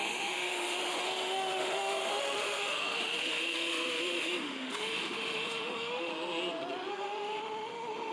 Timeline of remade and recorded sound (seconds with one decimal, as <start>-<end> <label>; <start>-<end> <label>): 0.0-6.1 remade; 6.1-6.9 recorded; 6.9-8.1 remade